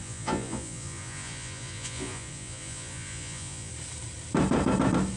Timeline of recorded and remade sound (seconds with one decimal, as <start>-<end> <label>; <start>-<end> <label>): 0.0-3.7 remade; 3.7-5.2 recorded